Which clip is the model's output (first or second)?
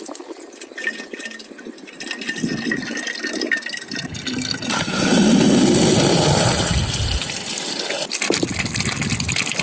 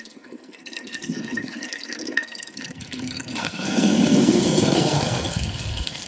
second